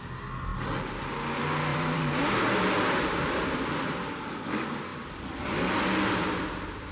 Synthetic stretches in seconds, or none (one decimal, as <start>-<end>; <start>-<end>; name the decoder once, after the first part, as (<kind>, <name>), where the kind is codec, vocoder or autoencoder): 1.7-4.3 (vocoder, BigVGAN v2)